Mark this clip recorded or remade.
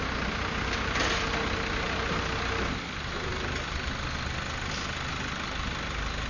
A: recorded